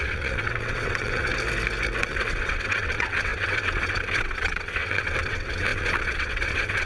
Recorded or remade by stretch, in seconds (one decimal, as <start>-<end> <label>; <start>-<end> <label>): 0.0-1.3 remade; 1.3-2.0 recorded; 2.0-6.9 remade